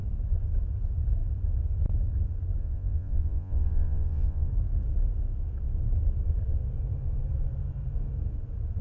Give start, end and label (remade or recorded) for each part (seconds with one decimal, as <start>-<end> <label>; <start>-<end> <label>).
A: 0.0-2.6 recorded; 2.6-4.5 remade; 4.5-8.8 recorded